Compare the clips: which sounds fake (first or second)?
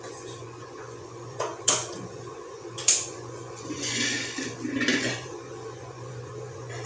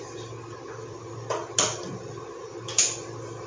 first